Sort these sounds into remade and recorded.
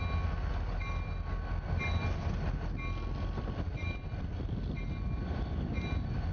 recorded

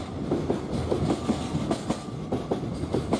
recorded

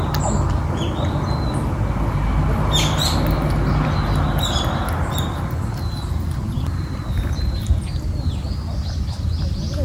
recorded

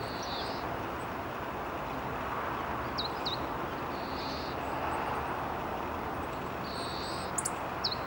recorded